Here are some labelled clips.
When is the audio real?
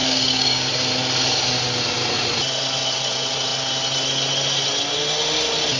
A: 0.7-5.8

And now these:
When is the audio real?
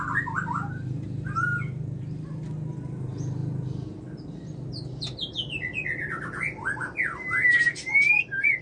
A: 0.0-8.6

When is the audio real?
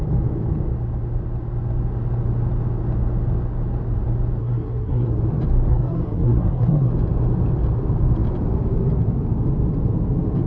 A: 0.0-4.4; 5.2-5.7; 6.9-10.5